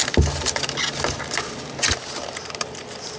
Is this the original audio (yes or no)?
yes